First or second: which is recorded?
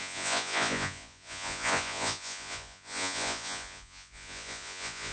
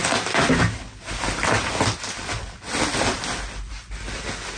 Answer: second